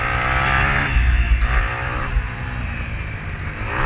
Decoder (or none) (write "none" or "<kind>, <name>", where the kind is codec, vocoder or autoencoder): none